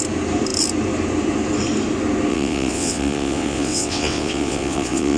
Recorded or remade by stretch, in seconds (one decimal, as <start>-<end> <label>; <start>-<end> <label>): 0.0-2.3 recorded; 2.3-5.2 remade